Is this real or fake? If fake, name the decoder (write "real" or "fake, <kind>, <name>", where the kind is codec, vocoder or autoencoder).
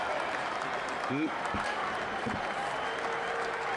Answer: real